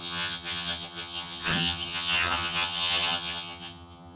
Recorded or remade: remade